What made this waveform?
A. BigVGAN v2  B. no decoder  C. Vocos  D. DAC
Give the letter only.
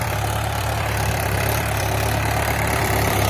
A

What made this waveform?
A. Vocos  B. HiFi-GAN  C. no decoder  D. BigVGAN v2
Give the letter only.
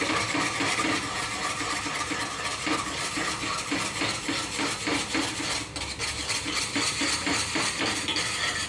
D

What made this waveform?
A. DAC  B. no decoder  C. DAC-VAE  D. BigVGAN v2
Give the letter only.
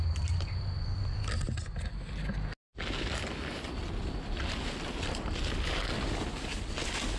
B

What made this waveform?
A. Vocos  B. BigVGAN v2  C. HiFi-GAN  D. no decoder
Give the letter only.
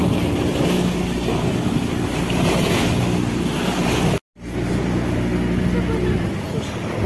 D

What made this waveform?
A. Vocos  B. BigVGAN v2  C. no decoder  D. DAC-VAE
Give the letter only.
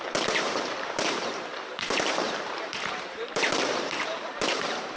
B